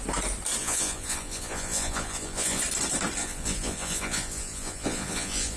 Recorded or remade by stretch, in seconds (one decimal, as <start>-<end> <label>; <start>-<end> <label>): 0.0-0.6 recorded; 0.6-2.6 remade; 2.6-3.2 recorded; 3.2-5.6 remade